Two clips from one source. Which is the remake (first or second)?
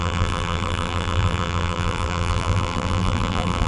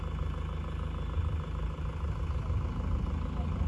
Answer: first